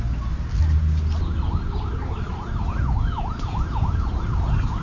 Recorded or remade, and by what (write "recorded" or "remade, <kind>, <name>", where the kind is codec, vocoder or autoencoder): recorded